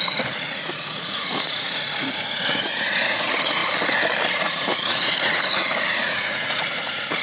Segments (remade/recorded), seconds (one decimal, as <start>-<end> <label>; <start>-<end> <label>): 0.0-3.6 remade; 3.6-4.3 recorded; 4.3-7.2 remade